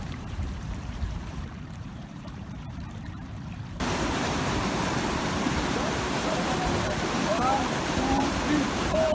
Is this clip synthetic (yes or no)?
yes